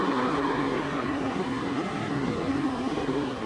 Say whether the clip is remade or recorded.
remade